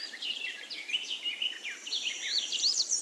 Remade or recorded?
remade